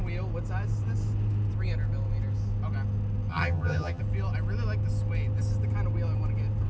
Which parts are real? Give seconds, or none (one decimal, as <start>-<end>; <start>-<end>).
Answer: 0.0-3.3; 4.0-6.7